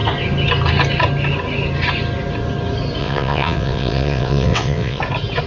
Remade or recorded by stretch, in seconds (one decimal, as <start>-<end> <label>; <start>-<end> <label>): 0.0-3.0 recorded; 3.0-5.0 remade; 5.0-5.5 recorded

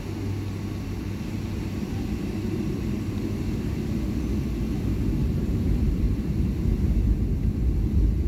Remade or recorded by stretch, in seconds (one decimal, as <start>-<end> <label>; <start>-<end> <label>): 0.0-5.2 recorded; 5.2-7.3 remade; 7.3-8.3 recorded

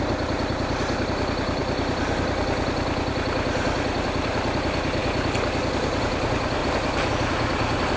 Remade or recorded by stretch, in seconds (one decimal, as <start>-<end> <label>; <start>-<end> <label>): 0.0-1.6 recorded; 1.6-3.1 remade; 3.1-6.6 recorded; 6.6-7.1 remade; 7.1-8.0 recorded

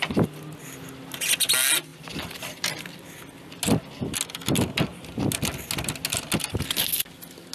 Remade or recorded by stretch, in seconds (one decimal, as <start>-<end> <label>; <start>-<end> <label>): 0.0-1.9 recorded; 1.9-3.2 remade; 3.2-7.5 recorded

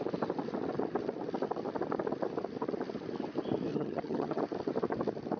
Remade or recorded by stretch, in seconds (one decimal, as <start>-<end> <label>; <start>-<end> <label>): 0.0-3.7 recorded; 3.7-4.4 remade; 4.4-5.4 recorded

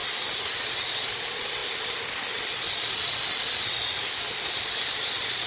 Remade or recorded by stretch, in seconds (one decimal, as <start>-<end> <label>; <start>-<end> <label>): 0.0-5.5 recorded

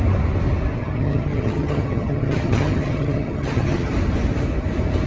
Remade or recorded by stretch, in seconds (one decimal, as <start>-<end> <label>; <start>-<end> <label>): 0.0-0.8 recorded; 0.8-3.9 remade; 3.9-5.1 recorded